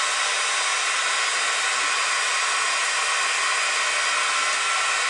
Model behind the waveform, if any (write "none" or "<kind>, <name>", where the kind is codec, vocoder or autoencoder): none